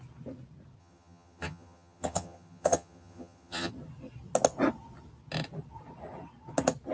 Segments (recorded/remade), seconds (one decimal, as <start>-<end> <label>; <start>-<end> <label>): 0.0-0.8 recorded; 0.8-3.7 remade; 3.7-6.9 recorded